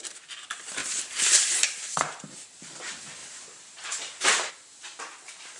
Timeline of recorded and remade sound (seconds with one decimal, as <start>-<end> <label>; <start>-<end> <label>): 0.0-0.8 recorded; 0.8-2.5 remade; 2.5-3.2 recorded; 3.2-4.5 remade; 4.5-5.6 recorded